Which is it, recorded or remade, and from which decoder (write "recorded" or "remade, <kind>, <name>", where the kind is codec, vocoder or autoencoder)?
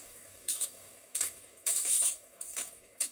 remade, codec, DAC